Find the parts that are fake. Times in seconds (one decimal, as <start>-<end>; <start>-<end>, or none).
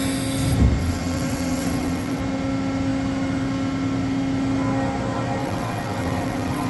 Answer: 0.8-2.2; 5.4-6.7